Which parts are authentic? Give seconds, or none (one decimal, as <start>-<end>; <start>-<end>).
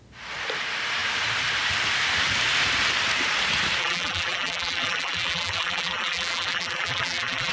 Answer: 0.0-3.8